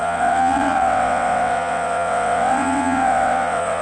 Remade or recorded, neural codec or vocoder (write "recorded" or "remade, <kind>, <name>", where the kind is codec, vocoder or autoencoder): remade, vocoder, WaveNeXt